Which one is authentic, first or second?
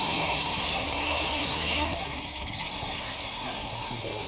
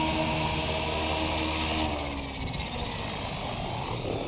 second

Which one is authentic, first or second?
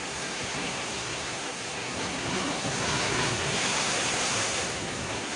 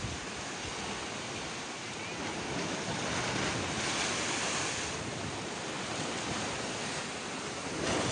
second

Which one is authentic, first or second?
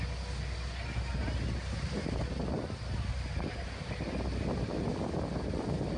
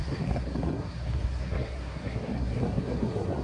first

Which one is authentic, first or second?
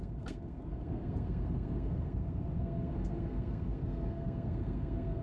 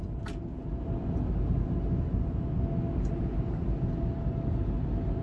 second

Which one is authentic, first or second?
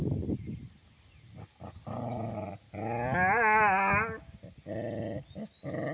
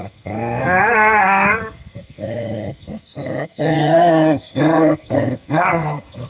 first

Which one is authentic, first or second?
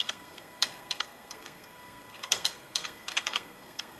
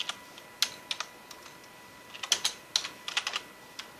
second